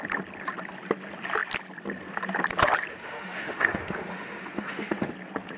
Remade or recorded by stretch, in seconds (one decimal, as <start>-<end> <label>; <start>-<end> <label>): 0.0-2.9 recorded; 2.9-5.1 remade; 5.1-5.6 recorded